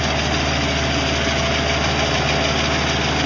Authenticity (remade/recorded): recorded